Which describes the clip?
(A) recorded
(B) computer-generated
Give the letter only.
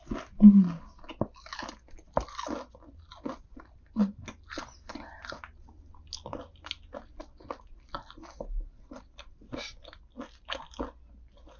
A